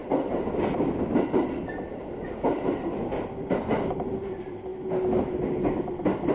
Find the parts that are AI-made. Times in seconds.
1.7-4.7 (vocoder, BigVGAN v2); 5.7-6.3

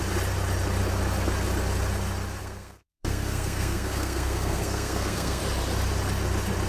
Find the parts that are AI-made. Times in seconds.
2.4-5.4 (codec, SNAC)

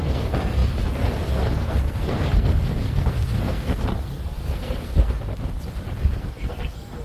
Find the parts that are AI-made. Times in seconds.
0.0-5.3 (codec, SNAC); 6.0-7.0

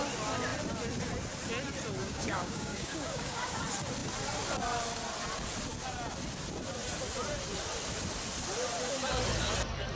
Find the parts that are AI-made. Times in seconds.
2.0-3.6 (codec, DAC)

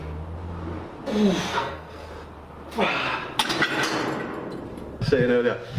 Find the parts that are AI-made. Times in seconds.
1.5-2.1 (codec, SNAC)

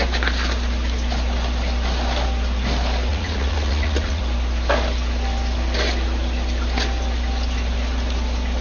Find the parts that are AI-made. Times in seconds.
3.1-4.2 (vocoder, Vocos)

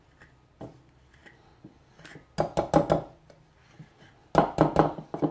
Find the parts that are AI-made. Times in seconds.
none